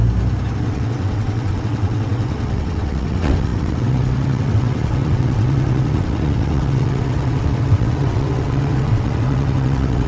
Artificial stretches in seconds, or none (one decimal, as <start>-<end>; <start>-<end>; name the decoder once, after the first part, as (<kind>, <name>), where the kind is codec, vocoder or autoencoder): 0.6-10.1 (vocoder, WaveNeXt)